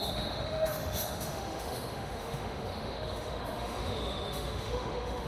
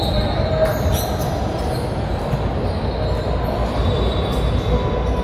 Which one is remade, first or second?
first